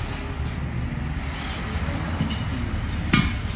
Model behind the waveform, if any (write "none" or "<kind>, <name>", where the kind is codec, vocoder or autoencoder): none